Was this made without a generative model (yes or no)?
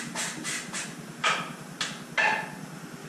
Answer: yes